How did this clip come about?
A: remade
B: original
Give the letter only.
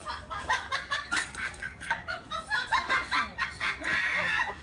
A